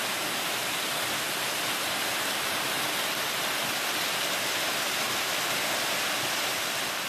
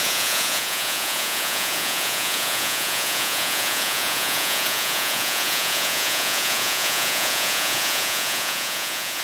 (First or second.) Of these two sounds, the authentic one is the first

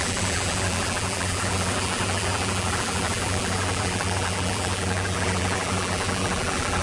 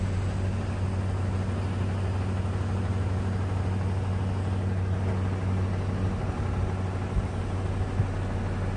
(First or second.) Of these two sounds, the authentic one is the second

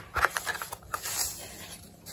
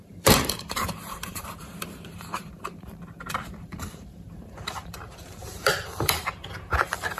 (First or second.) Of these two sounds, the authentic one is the first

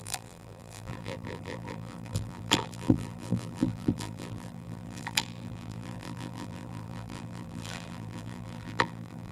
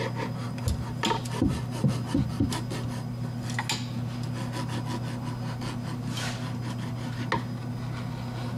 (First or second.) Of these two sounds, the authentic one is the second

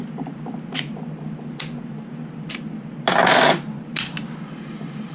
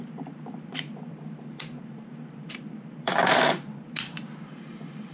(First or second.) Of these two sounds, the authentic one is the first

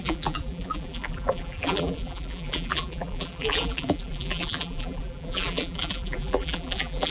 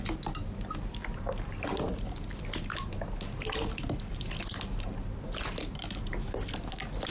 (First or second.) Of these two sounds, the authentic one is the second